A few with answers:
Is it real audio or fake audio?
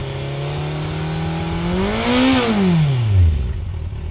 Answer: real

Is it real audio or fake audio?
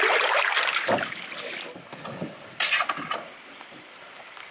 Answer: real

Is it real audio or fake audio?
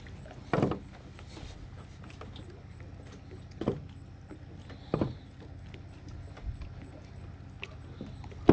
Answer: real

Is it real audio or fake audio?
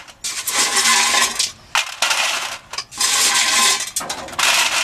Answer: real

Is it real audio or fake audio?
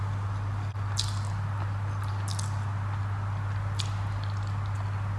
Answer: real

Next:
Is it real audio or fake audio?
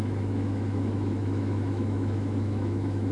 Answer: fake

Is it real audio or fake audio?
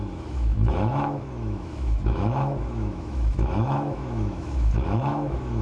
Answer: fake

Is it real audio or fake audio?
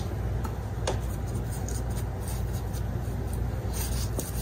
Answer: real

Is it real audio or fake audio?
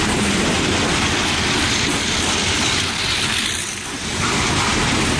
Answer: real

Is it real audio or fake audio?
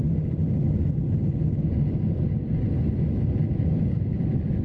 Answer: real